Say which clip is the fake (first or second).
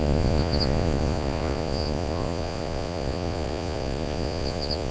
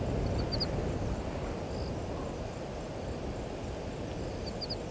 first